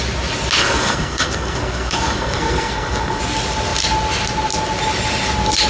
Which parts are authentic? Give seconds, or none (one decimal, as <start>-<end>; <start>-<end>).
0.0-0.6; 3.2-5.7